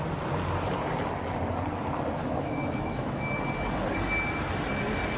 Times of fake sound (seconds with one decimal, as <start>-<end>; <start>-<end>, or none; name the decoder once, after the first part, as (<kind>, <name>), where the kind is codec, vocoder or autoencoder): 2.2-3.2 (autoencoder, DAC-VAE)